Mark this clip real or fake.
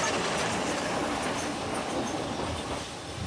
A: real